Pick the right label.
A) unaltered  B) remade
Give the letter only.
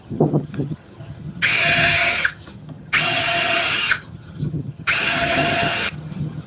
B